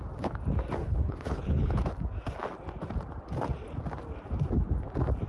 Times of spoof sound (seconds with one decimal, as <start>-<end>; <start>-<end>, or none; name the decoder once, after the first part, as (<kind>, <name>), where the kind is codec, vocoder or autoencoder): 0.8-1.8 (codec, HILCodec)